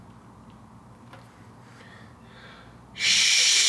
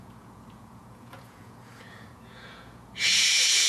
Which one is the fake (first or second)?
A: second